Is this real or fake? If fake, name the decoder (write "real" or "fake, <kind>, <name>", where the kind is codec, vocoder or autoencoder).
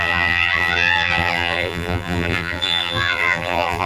fake, vocoder, BigVGAN v2